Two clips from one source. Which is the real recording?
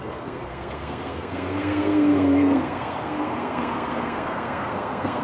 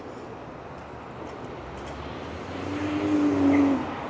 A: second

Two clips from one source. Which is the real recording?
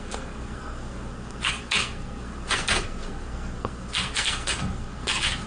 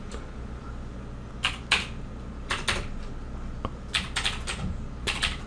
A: second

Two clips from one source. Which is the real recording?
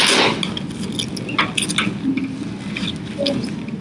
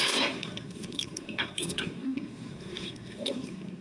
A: first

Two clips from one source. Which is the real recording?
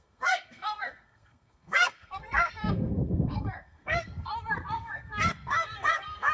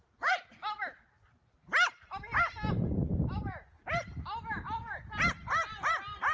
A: second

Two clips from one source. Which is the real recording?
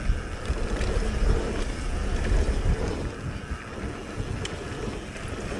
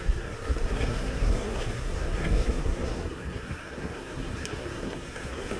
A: first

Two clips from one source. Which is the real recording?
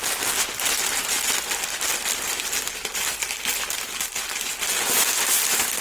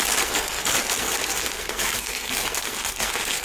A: first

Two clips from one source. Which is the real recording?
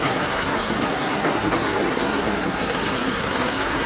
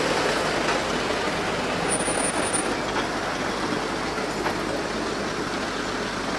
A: second